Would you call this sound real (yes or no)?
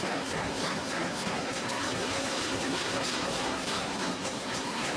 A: no